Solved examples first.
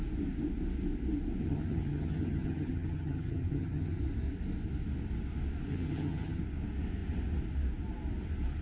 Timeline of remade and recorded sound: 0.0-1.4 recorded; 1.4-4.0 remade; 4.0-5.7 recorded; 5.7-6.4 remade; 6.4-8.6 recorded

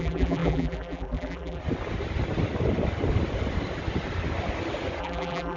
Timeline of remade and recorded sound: 0.0-1.6 remade; 1.6-5.0 recorded; 5.0-5.6 remade

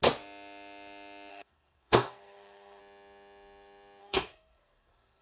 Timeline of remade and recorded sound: 0.0-1.3 recorded; 1.3-2.8 remade; 2.8-4.0 recorded; 4.0-5.2 remade

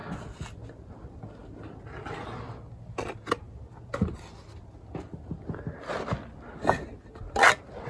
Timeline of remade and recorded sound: 0.0-7.9 recorded

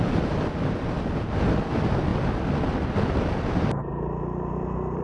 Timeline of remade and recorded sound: 0.0-5.0 recorded

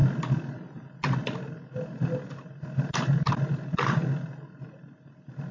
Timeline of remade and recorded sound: 0.0-5.5 recorded

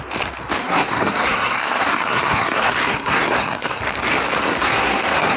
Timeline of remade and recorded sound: 0.0-0.6 recorded; 0.6-3.8 remade; 3.8-4.5 recorded; 4.5-5.4 remade